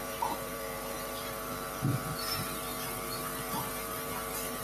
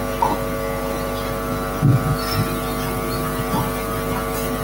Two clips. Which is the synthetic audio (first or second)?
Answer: first